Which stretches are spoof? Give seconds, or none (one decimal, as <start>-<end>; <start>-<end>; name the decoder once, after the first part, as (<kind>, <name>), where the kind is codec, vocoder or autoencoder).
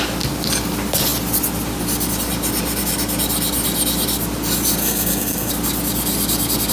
4.8-5.5 (codec, SNAC)